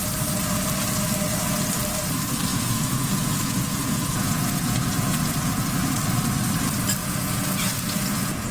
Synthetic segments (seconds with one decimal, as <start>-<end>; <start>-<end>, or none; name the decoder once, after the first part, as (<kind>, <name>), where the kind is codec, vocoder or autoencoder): 2.5-5.7 (vocoder, Vocos); 7.0-8.5